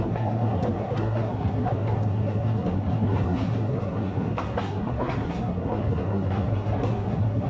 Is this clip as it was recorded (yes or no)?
no